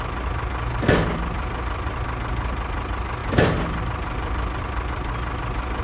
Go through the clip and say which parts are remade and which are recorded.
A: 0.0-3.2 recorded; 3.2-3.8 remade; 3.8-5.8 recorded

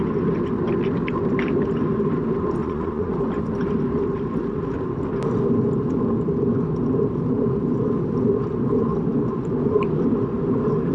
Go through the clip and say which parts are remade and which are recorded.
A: 0.0-2.6 recorded; 2.6-3.1 remade; 3.1-10.9 recorded

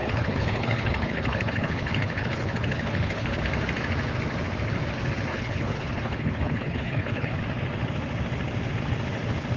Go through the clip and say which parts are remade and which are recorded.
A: 0.0-3.4 remade; 3.4-5.3 recorded; 5.3-7.4 remade; 7.4-9.6 recorded

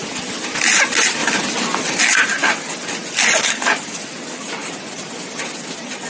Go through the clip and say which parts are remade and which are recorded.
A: 0.0-6.1 recorded

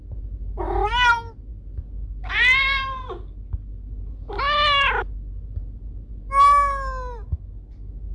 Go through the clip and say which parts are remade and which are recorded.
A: 0.0-8.1 recorded

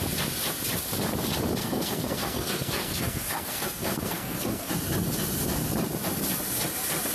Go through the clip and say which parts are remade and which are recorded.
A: 0.0-1.6 recorded; 1.6-4.7 remade; 4.7-7.1 recorded

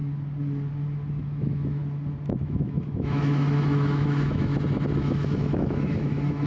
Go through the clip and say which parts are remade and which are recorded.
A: 0.0-1.2 recorded; 1.2-1.8 remade; 1.8-2.4 recorded; 2.4-4.5 remade; 4.5-5.0 recorded; 5.0-6.5 remade

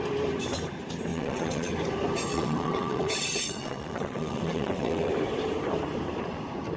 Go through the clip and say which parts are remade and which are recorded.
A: 0.0-1.1 recorded; 1.1-1.7 remade; 1.7-2.3 recorded; 2.3-5.1 remade; 5.1-6.8 recorded